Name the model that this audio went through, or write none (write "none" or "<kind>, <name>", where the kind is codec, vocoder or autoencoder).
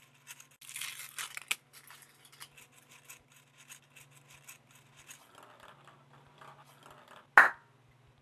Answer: none